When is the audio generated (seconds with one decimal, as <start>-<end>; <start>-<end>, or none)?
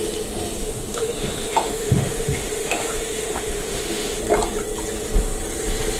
0.6-4.2